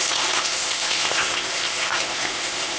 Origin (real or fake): fake